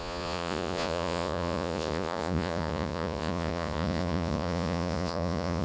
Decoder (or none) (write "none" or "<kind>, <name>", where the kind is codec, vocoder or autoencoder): vocoder, Vocos